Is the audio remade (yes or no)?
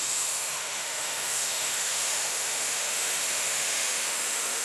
yes